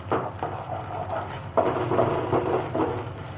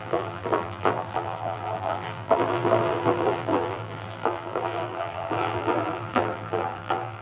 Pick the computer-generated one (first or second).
second